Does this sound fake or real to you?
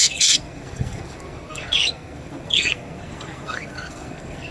fake